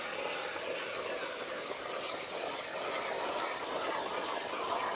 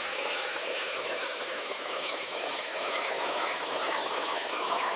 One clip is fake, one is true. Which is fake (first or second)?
second